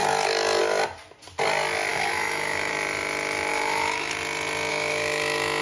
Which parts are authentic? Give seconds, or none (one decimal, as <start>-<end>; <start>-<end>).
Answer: 0.0-1.9; 2.7-3.5; 4.1-4.7